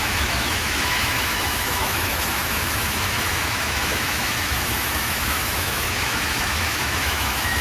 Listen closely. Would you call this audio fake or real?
fake